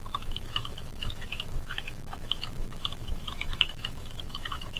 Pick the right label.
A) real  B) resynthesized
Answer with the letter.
B